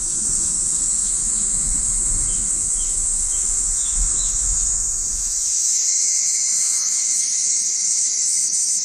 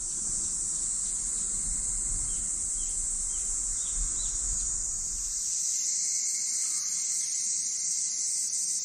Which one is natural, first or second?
second